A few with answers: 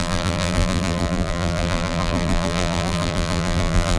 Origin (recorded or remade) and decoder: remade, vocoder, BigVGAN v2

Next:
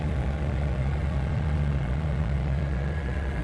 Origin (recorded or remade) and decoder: remade, vocoder, Vocos